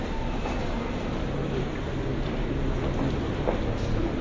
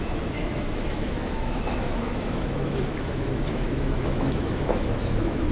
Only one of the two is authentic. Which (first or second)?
first